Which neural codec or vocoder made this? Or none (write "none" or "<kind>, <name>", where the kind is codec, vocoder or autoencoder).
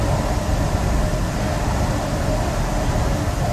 vocoder, BigVGAN v2